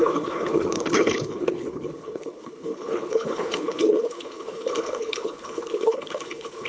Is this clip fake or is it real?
fake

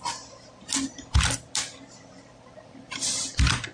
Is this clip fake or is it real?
real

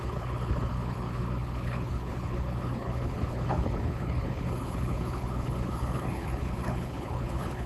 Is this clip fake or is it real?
fake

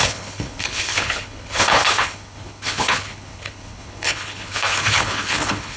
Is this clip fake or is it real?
fake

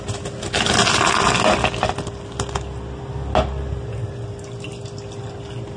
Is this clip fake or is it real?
real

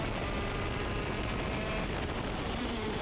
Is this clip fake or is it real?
real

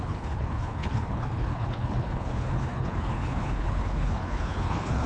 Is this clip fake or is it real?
fake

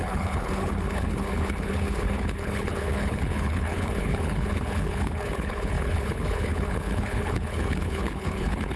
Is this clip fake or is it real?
fake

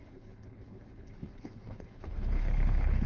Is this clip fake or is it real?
fake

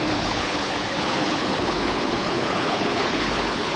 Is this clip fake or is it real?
fake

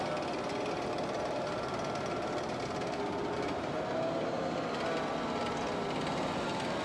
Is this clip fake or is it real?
real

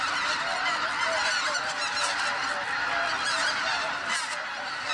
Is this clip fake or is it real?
real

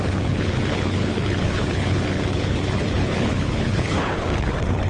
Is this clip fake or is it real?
fake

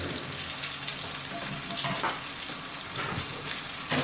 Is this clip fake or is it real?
real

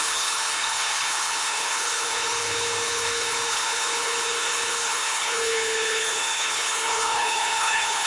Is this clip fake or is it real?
fake